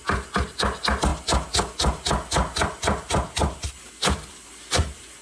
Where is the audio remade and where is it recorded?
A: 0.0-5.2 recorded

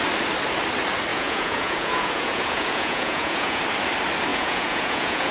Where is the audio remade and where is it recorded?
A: 0.0-1.1 recorded; 1.1-3.6 remade; 3.6-4.3 recorded; 4.3-5.3 remade

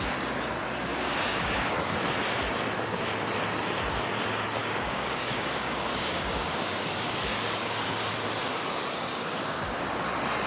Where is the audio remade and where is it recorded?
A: 0.0-0.9 recorded; 0.9-1.7 remade; 1.7-4.6 recorded; 4.6-8.1 remade; 8.1-9.1 recorded; 9.1-9.8 remade; 9.8-10.5 recorded

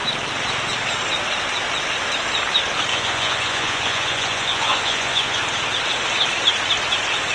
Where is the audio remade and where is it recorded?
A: 0.0-2.9 recorded; 2.9-5.4 remade; 5.4-7.3 recorded

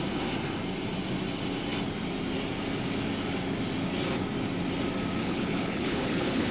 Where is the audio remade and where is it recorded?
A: 0.0-5.2 recorded; 5.2-6.5 remade

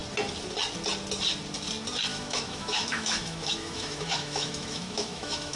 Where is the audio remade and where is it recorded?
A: 0.0-2.1 recorded; 2.1-5.6 remade

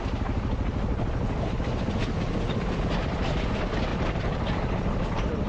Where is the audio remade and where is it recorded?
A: 0.0-3.9 recorded; 3.9-5.5 remade

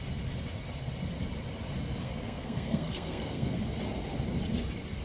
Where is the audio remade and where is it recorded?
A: 0.0-2.0 recorded; 2.0-3.6 remade; 3.6-5.0 recorded